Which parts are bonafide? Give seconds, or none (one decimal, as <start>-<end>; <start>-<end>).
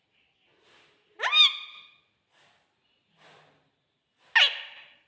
0.0-5.1